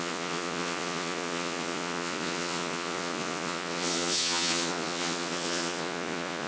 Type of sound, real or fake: fake